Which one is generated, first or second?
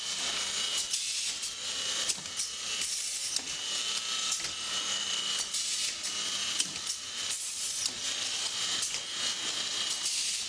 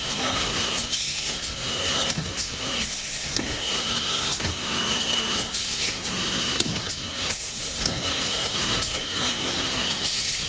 second